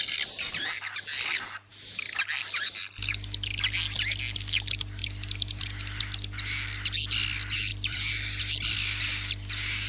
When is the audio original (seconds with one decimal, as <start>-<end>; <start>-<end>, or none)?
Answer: 0.0-5.0; 6.0-7.7; 8.4-9.9